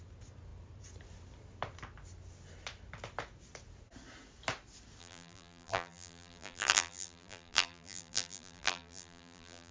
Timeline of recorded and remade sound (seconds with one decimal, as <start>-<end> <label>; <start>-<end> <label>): 0.0-5.0 recorded; 5.0-9.7 remade